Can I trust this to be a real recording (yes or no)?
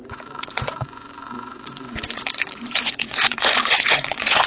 no